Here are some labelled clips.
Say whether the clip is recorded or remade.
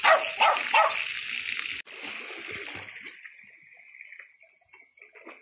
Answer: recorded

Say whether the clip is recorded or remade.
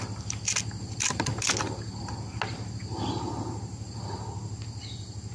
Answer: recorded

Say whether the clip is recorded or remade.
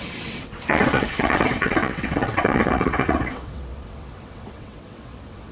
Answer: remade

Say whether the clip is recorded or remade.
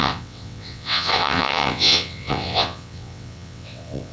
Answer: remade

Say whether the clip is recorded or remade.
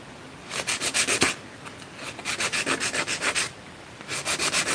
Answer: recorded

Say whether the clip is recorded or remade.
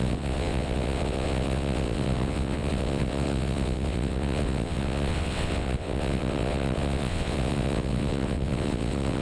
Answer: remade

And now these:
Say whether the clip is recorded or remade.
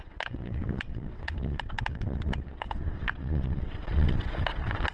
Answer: remade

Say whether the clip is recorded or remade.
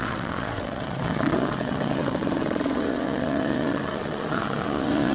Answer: remade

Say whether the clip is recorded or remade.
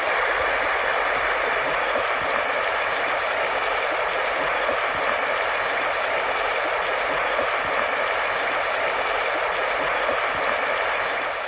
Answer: recorded